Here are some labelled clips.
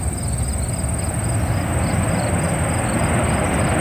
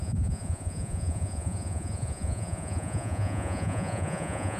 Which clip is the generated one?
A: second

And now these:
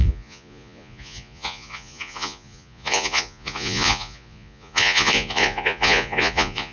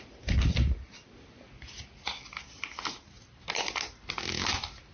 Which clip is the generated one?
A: first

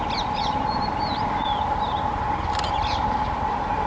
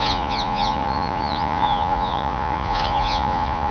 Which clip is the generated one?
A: second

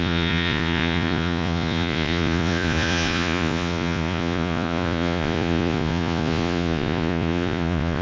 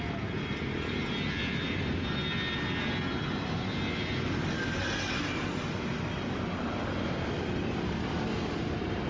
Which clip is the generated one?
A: first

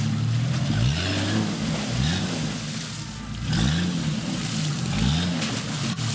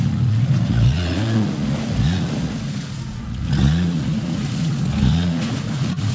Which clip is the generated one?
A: second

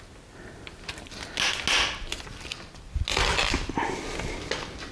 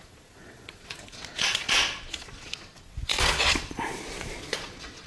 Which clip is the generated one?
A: second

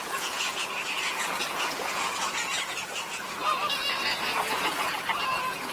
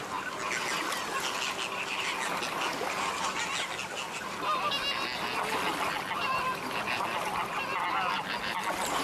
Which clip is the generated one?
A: first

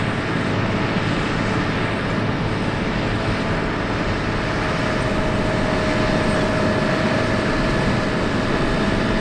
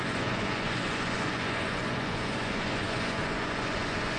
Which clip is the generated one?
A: second